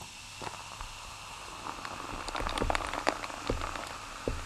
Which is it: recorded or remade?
recorded